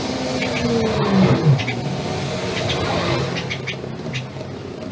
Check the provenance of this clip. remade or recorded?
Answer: recorded